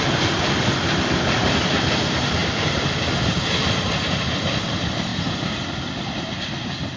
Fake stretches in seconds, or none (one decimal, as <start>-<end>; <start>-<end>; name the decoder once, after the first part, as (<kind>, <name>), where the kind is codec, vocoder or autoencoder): none